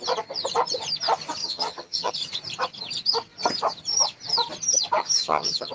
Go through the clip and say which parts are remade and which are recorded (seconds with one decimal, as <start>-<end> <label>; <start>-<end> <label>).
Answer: 0.0-1.4 recorded; 1.4-2.1 remade; 2.1-5.0 recorded; 5.0-5.7 remade